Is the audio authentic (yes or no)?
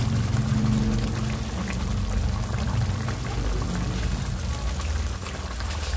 yes